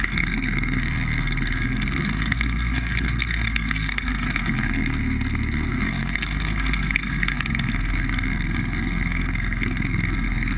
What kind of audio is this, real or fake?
fake